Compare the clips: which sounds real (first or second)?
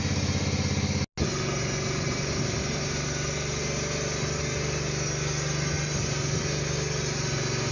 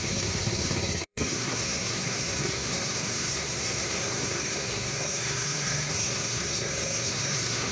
first